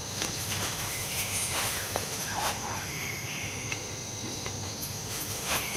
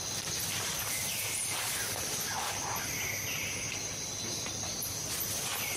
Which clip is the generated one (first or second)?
first